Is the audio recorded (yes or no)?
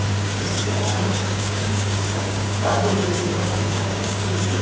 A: no